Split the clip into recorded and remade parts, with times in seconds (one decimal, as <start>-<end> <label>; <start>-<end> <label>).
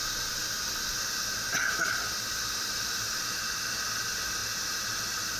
0.0-5.4 recorded